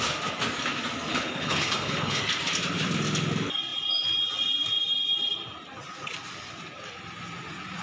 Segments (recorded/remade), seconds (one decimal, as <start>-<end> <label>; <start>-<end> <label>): 0.0-1.1 recorded; 1.1-2.2 remade; 2.2-7.8 recorded